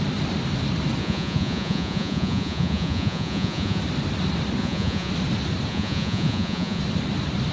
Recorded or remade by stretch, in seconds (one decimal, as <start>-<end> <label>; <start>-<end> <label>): 0.0-1.0 recorded; 1.0-3.8 remade; 3.8-4.6 recorded; 4.6-5.1 remade; 5.1-5.7 recorded; 5.7-6.8 remade; 6.8-7.5 recorded